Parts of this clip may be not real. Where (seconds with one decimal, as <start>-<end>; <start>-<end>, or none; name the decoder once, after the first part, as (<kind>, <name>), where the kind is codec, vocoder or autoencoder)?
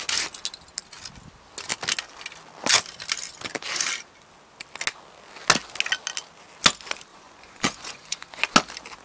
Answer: 7.1-8.4 (vocoder, Vocos)